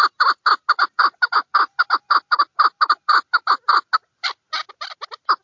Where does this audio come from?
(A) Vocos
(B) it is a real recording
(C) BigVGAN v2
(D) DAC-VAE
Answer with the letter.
B